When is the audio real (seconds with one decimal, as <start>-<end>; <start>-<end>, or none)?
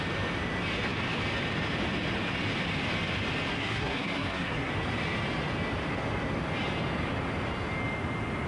0.0-3.5; 4.7-8.5